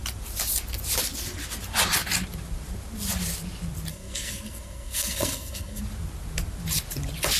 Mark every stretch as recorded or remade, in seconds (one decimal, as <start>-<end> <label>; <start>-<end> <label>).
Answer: 0.0-3.9 recorded; 3.9-5.8 remade; 5.8-7.4 recorded

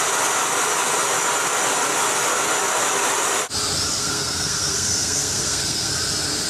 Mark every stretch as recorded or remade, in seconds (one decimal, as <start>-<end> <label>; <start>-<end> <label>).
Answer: 0.0-3.9 recorded; 3.9-5.9 remade; 5.9-6.5 recorded

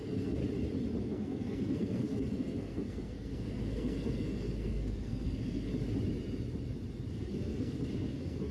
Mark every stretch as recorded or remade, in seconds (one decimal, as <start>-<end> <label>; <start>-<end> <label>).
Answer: 0.0-0.4 remade; 0.4-1.0 recorded; 1.0-5.7 remade; 5.7-7.1 recorded; 7.1-8.5 remade

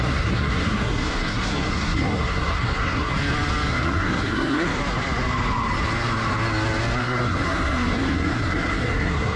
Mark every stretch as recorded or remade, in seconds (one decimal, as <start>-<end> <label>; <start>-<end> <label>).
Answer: 0.0-3.1 remade; 3.1-3.7 recorded; 3.7-4.8 remade; 4.8-7.0 recorded; 7.0-9.4 remade

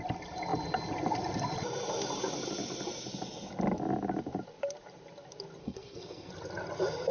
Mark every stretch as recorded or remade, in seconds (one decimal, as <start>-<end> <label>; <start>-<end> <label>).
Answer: 0.0-5.6 recorded; 5.6-6.3 remade; 6.3-7.1 recorded